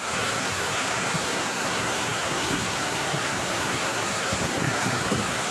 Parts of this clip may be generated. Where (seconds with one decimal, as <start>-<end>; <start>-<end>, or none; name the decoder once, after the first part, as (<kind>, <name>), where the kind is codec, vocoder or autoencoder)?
0.0-5.5 (codec, SNAC)